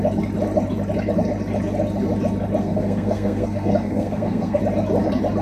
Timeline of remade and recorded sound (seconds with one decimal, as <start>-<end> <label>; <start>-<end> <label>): 0.0-2.6 recorded; 2.6-4.6 remade; 4.6-5.4 recorded

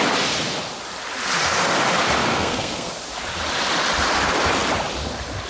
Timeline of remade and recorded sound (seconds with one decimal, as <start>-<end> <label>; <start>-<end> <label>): 0.0-2.3 recorded; 2.3-2.9 remade; 2.9-5.5 recorded

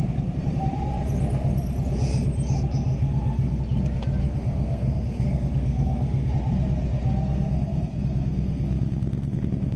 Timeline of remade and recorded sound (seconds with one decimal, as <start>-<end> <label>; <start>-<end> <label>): 0.0-2.9 recorded; 2.9-3.6 remade; 3.6-4.2 recorded; 4.2-6.3 remade; 6.3-7.3 recorded; 7.3-9.8 remade

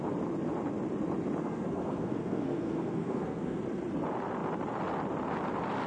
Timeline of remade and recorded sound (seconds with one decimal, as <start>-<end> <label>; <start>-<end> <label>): 0.0-1.4 recorded; 1.4-3.6 remade; 3.6-5.9 recorded